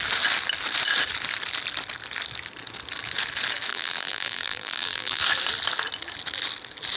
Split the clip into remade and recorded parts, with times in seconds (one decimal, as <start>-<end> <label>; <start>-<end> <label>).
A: 0.0-3.7 recorded; 3.7-5.2 remade; 5.2-7.0 recorded